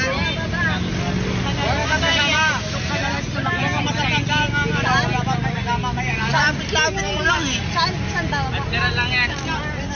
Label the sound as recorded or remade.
recorded